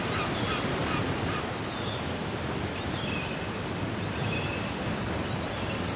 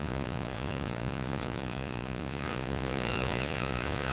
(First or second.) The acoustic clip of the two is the first